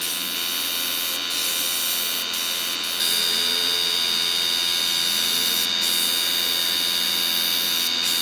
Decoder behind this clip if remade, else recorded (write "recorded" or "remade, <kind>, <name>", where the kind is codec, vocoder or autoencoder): recorded